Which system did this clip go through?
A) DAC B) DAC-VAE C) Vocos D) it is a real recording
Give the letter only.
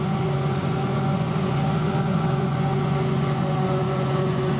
C